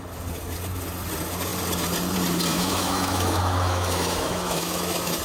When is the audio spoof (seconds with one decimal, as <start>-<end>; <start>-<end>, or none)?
2.5-5.2